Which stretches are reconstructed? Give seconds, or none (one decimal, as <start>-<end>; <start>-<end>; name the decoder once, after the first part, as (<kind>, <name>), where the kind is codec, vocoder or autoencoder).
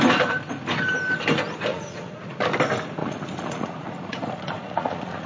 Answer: 1.7-2.4 (vocoder, Vocos); 3.0-5.3